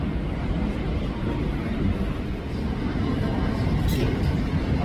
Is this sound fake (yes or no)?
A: no